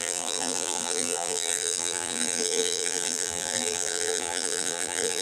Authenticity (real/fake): fake